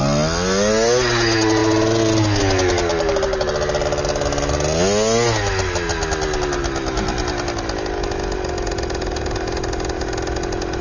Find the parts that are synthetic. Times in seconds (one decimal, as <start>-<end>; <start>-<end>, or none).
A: none